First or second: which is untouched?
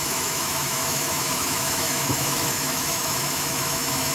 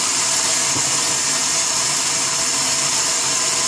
second